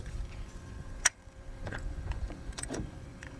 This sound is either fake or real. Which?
fake